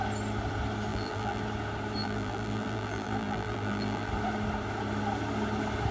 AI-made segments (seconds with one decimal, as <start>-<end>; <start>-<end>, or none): 0.9-1.4; 2.0-4.1